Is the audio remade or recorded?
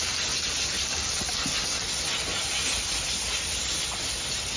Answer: recorded